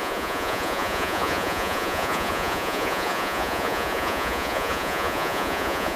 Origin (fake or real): fake